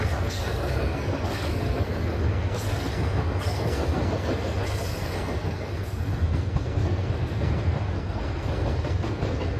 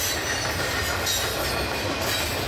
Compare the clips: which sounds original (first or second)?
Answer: second